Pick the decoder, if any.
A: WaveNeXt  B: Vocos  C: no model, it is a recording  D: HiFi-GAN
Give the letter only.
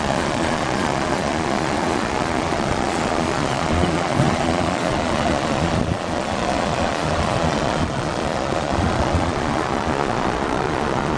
B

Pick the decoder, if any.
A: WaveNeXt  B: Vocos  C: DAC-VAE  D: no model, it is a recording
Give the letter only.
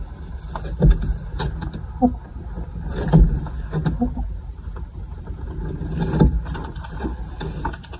D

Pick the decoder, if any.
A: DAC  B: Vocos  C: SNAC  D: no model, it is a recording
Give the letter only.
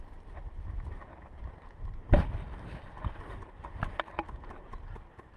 D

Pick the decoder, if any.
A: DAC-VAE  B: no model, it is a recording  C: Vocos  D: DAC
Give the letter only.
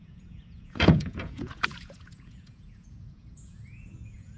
C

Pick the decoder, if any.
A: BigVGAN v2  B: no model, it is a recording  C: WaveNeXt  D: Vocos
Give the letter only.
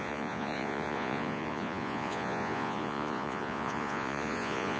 D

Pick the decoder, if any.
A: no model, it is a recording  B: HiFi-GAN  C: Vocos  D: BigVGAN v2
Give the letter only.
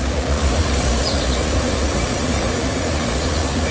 C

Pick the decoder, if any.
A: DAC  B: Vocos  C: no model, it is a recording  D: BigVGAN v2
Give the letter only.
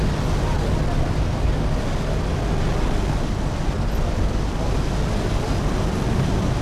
C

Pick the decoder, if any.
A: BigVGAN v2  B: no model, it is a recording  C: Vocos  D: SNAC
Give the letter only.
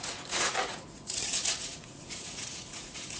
C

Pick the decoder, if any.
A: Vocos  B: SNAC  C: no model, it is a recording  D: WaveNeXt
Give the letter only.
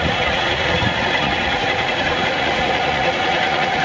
A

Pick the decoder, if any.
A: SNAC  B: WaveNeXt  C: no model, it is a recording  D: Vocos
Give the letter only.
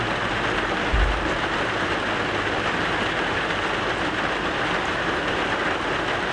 C